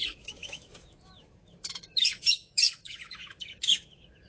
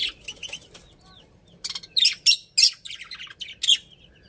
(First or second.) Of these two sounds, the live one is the second